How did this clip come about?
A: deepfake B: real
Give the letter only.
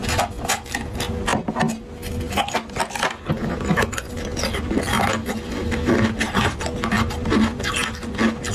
B